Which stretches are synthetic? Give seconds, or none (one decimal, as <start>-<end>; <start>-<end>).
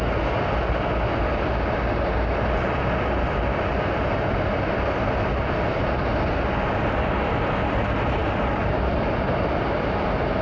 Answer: 8.2-8.9